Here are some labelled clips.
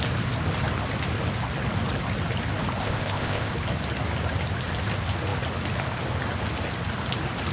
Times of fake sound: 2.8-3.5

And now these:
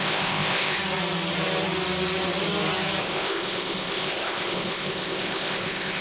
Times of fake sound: 0.0-0.8; 3.0-6.0

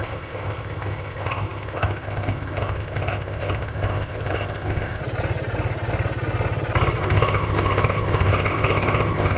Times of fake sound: 0.0-5.0; 7.0-9.4